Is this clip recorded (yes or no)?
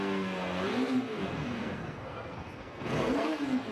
no